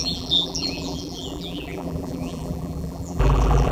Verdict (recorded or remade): remade